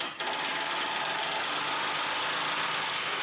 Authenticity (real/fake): real